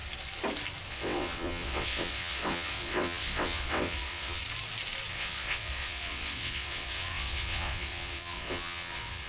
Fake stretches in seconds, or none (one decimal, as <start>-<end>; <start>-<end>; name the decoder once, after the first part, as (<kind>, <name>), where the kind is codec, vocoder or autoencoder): 0.9-4.4 (vocoder, WaveNeXt); 5.1-9.3